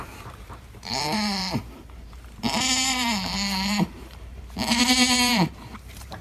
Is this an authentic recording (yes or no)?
no